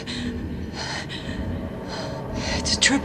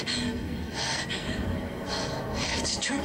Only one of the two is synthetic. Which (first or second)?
second